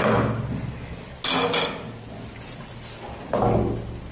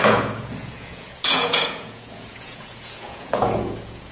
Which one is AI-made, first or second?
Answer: second